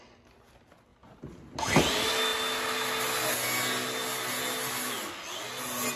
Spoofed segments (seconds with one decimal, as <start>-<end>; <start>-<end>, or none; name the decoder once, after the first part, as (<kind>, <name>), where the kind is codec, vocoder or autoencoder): none